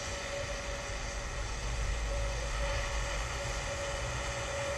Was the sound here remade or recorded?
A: remade